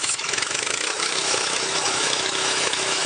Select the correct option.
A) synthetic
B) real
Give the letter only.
A